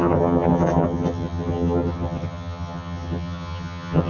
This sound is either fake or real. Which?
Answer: fake